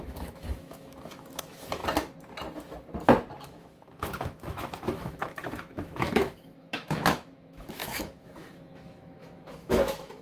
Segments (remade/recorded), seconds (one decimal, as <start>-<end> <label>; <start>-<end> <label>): 0.0-1.8 remade; 1.8-3.4 recorded; 3.4-10.2 remade